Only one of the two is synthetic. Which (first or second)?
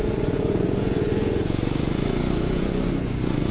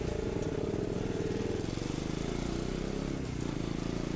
first